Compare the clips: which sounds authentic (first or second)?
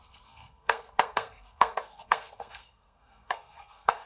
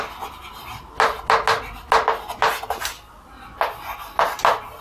second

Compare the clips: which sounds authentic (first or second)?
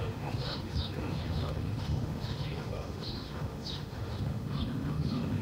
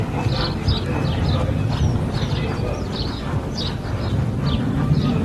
second